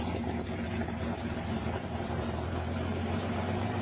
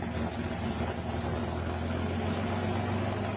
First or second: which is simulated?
first